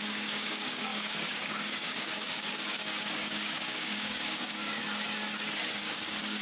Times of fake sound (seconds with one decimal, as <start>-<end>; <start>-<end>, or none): 0.0-4.8; 5.8-6.4